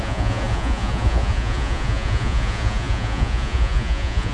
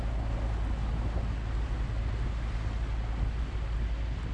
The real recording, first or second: second